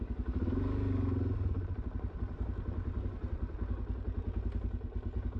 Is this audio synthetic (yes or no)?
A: no